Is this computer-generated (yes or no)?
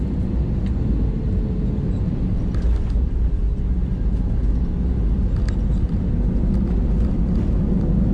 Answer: no